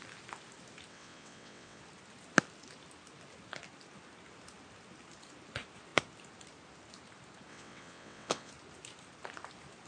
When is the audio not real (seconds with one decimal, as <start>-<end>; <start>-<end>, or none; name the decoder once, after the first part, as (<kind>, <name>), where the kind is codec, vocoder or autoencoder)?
0.9-1.8 (vocoder, WaveNeXt); 7.5-8.5